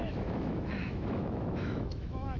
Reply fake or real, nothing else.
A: fake